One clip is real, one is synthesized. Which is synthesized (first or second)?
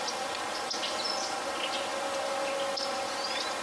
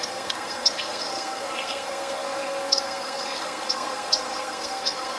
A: second